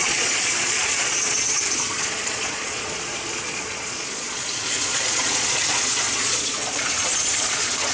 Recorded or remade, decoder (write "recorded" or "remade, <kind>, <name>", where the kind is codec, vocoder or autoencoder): remade, vocoder, Vocos